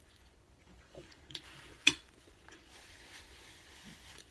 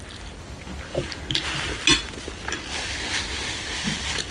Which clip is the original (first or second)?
second